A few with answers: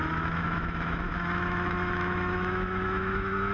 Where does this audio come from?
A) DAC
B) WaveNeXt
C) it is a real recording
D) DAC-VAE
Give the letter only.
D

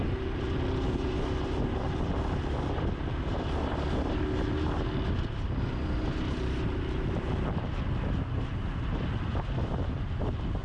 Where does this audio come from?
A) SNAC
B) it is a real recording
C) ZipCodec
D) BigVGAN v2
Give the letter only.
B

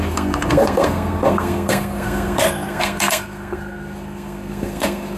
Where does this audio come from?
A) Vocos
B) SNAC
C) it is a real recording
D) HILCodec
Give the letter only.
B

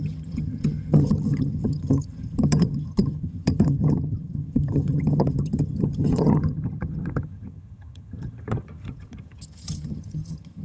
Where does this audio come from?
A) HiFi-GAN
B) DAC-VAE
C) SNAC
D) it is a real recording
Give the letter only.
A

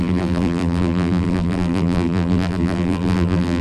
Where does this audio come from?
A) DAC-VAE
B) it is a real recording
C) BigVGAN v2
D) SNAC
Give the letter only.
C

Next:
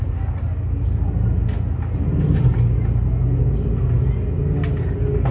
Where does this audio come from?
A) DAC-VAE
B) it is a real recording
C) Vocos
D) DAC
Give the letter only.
B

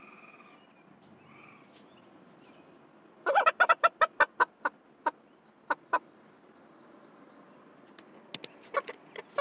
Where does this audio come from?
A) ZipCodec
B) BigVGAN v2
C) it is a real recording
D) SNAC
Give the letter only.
C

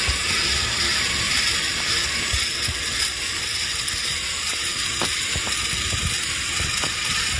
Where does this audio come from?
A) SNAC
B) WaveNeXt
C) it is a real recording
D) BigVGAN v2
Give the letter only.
C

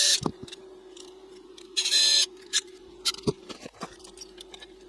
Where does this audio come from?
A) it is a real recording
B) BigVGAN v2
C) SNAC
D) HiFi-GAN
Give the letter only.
B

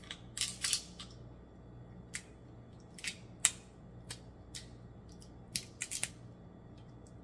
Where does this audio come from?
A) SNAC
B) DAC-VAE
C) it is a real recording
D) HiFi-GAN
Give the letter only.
C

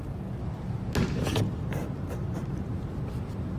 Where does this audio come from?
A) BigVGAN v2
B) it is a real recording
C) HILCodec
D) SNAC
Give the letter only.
B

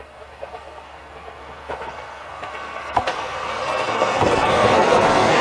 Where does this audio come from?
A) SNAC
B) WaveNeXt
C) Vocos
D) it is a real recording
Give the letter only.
A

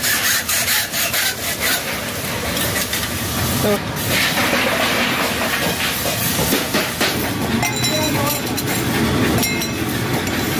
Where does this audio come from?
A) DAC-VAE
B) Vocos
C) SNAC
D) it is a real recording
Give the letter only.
D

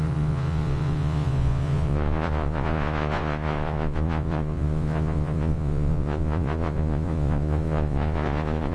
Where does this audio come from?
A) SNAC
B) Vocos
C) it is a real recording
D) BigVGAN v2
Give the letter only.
B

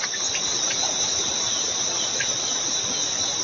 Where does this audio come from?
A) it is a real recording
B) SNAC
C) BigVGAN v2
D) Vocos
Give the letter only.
C